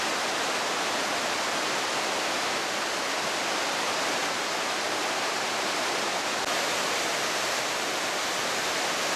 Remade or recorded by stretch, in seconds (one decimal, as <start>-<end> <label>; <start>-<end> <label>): 0.0-9.2 recorded

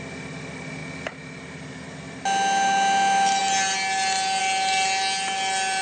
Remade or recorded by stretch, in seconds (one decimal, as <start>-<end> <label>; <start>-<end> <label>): 0.0-5.8 recorded

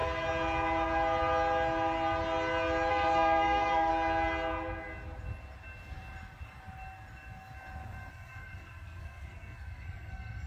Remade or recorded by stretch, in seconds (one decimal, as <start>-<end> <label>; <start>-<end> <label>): 0.0-2.9 recorded; 2.9-3.9 remade; 3.9-8.1 recorded; 8.1-10.5 remade

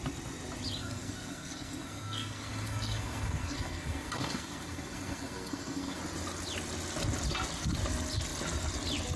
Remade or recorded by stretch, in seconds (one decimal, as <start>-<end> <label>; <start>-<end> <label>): 0.0-0.8 recorded; 0.8-6.0 remade; 6.0-9.2 recorded

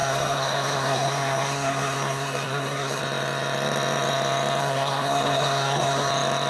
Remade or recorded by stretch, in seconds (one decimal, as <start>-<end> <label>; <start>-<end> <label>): 0.0-3.0 remade; 3.0-4.6 recorded; 4.6-6.1 remade; 6.1-6.5 recorded

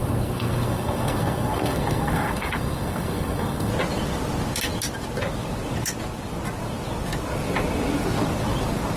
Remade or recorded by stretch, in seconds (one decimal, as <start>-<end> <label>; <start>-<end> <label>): 0.0-3.7 remade; 3.7-9.0 recorded

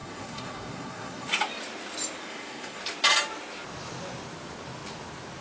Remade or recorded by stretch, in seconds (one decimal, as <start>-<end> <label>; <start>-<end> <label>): 0.0-1.3 remade; 1.3-2.2 recorded; 2.2-2.8 remade; 2.8-5.4 recorded